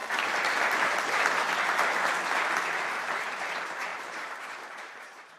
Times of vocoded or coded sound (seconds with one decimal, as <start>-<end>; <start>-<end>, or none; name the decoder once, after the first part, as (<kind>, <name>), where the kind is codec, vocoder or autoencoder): 3.2-5.4 (vocoder, BigVGAN v2)